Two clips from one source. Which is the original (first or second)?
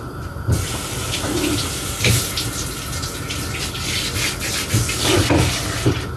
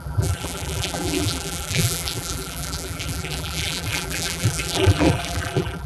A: first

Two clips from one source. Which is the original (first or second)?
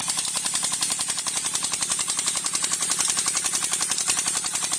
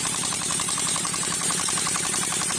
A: first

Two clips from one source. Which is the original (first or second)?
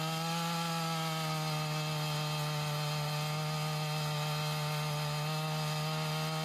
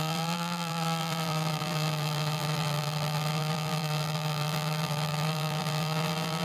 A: first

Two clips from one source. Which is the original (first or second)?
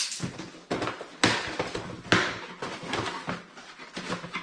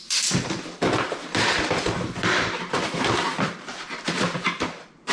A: first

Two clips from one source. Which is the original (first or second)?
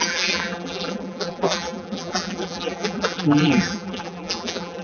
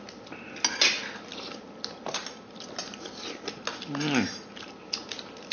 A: second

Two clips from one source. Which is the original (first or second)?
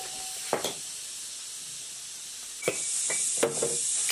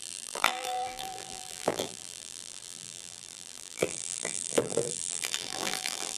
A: first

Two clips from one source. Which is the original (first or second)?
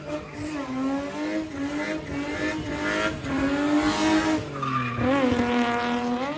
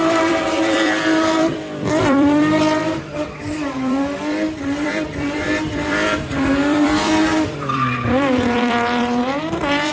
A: first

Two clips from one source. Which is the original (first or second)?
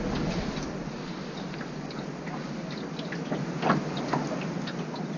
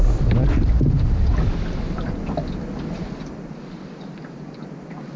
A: first